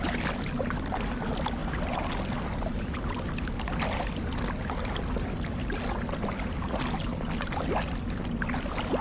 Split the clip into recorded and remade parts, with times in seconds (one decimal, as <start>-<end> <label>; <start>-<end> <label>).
0.0-9.0 recorded